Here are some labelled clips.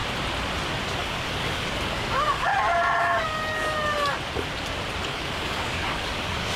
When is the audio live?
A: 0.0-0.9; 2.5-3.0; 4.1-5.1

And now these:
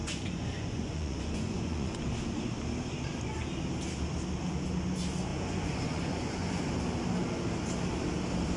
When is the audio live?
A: 1.9-5.3; 6.6-8.6